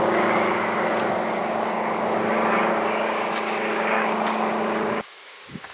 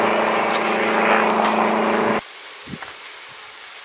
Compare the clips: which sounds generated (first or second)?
first